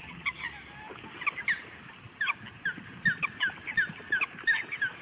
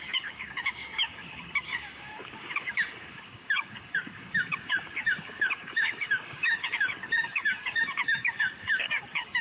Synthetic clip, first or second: second